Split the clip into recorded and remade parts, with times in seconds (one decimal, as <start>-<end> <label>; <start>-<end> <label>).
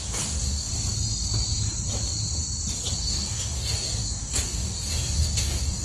0.0-0.7 remade; 0.7-3.0 recorded; 3.0-5.8 remade